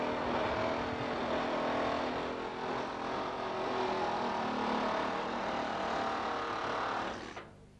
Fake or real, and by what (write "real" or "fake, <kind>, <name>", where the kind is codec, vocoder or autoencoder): real